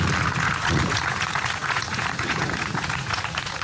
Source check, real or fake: fake